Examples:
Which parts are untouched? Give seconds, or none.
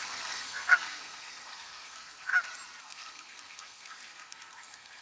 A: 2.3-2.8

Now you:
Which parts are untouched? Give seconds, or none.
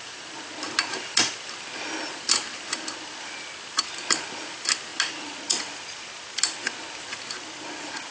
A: 0.0-8.1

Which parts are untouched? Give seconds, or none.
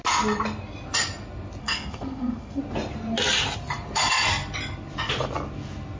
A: 0.0-1.6; 2.6-6.0